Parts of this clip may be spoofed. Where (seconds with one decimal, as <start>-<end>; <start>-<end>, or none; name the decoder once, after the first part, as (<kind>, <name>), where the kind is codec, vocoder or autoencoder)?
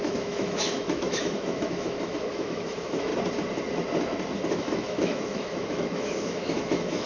0.0-3.1 (autoencoder, DAC-VAE); 4.5-7.1